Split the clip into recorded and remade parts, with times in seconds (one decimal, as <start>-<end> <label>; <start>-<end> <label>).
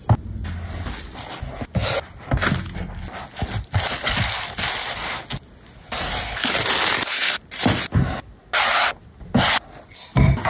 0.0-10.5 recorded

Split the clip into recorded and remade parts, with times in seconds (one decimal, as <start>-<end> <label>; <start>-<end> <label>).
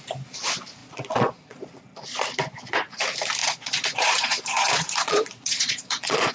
0.0-0.8 recorded; 0.8-1.7 remade; 1.7-3.4 recorded; 3.4-6.3 remade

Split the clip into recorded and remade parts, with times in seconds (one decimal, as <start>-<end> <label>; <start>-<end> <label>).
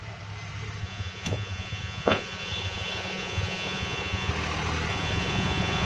0.0-0.8 recorded; 0.8-4.3 remade; 4.3-4.9 recorded; 4.9-5.9 remade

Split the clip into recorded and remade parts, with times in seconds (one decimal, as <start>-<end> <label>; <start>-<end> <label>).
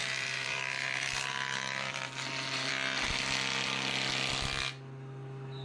0.0-2.7 remade; 2.7-5.6 recorded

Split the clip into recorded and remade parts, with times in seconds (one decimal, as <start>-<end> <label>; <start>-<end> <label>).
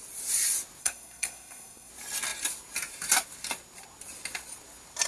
0.0-0.8 recorded; 0.8-1.9 remade; 1.9-5.1 recorded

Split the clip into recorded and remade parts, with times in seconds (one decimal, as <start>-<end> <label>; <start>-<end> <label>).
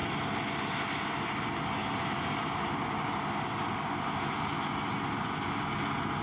0.0-6.2 recorded